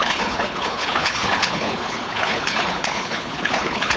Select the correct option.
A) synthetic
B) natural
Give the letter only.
A